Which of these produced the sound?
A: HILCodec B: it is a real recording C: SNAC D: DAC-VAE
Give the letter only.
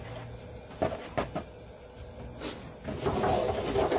B